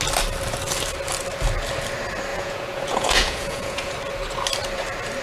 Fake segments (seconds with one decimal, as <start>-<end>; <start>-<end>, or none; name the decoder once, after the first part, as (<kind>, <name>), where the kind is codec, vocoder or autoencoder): 2.3-3.9 (vocoder, Vocos)